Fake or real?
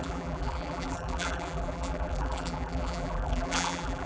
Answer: fake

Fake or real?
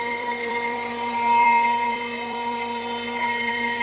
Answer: fake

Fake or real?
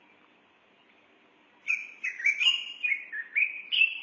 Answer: fake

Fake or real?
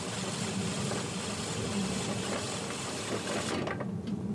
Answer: real